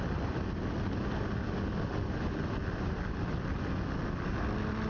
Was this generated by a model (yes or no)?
no